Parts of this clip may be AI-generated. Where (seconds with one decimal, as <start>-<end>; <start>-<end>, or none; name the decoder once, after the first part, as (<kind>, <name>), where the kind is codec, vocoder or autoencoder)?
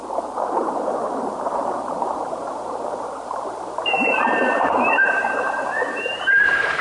0.0-6.8 (vocoder, BigVGAN v2)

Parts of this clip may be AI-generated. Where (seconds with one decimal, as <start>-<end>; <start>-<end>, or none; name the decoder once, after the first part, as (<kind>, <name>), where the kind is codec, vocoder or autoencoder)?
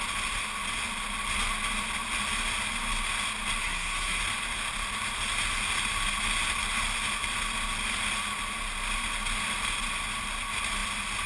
3.6-4.2 (codec, SNAC)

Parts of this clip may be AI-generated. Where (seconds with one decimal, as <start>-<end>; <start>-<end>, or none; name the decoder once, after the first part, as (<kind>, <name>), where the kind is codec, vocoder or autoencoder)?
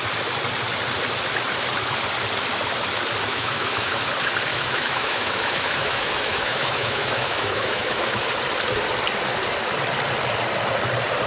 3.3-4.1 (autoencoder, DAC-VAE); 4.5-8.3